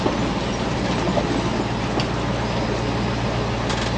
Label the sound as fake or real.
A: real